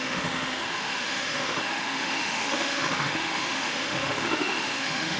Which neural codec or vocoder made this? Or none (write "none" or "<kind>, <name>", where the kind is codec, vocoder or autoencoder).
autoencoder, DAC-VAE